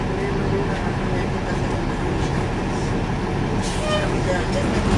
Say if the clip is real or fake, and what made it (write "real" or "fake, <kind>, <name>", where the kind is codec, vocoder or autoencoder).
real